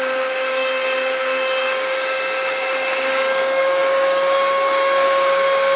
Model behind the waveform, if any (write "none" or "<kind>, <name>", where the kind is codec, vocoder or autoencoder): codec, DAC